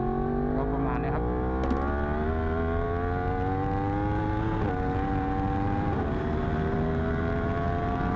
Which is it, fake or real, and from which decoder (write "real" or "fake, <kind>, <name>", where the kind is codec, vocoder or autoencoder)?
real